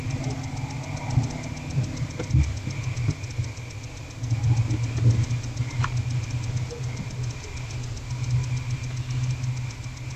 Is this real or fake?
real